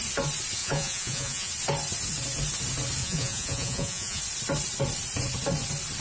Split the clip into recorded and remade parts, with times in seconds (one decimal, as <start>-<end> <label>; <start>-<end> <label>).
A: 0.0-0.6 recorded; 0.6-1.5 remade; 1.5-3.0 recorded; 3.0-4.2 remade; 4.2-6.0 recorded